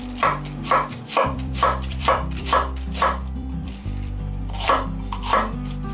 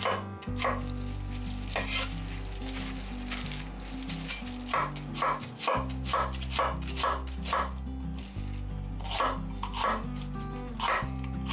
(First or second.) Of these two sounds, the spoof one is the first